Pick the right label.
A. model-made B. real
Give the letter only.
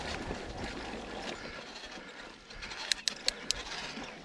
B